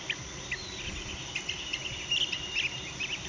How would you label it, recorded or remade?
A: recorded